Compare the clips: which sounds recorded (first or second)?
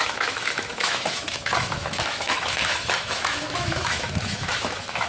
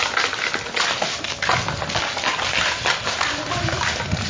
second